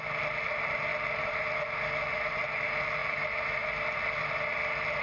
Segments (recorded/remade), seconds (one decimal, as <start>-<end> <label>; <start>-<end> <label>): 0.0-5.0 recorded